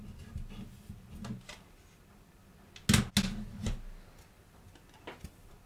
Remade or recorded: recorded